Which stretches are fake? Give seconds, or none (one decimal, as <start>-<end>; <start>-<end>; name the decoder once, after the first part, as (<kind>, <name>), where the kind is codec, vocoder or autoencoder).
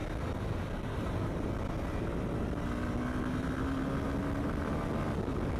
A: none